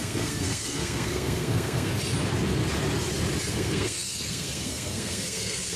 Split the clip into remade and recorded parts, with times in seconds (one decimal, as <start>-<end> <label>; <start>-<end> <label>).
0.0-1.9 remade; 1.9-3.5 recorded; 3.5-5.8 remade